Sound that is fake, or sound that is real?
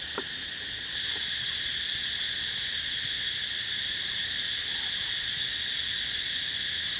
real